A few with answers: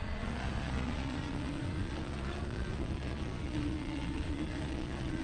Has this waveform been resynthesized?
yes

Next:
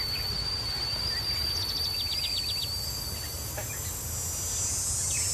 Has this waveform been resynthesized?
no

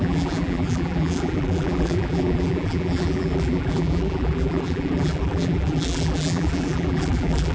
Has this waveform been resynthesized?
yes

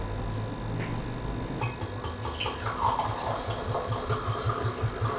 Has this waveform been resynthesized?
no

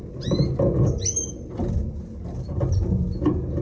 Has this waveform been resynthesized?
no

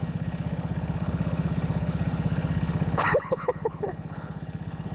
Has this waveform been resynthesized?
yes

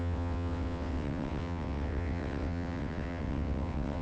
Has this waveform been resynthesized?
yes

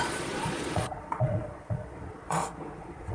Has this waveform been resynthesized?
yes